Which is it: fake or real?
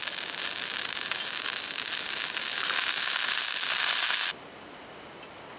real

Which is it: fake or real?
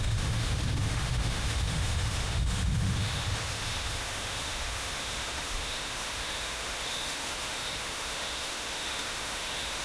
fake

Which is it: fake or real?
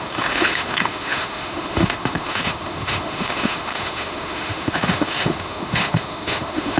fake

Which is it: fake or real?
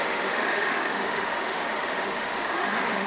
fake